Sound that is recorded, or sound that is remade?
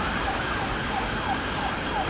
recorded